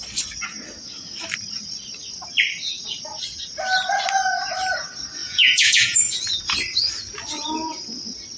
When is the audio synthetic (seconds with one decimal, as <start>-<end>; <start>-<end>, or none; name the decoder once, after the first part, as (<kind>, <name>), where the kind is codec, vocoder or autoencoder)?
5.2-6.4 (vocoder, Vocos)